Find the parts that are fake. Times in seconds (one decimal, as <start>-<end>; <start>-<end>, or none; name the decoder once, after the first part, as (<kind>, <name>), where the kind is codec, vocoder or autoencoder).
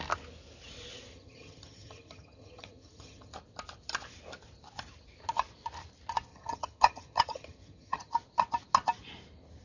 1.1-3.3 (vocoder, HiFi-GAN); 6.3-8.1